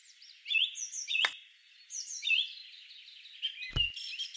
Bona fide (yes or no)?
yes